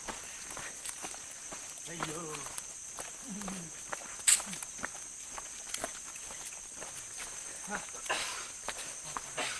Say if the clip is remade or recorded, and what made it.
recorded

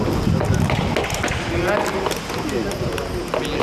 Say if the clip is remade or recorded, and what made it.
recorded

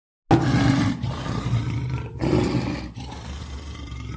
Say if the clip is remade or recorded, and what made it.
recorded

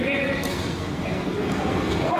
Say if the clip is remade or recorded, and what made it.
remade, codec, SNAC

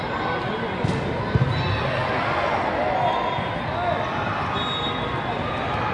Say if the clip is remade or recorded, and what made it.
recorded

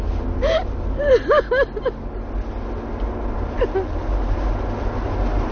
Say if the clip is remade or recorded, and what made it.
recorded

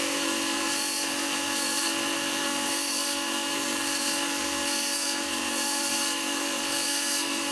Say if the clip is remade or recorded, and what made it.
remade, codec, SNAC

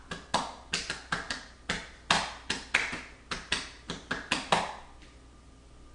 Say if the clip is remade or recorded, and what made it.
recorded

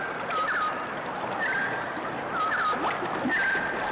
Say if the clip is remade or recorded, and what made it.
recorded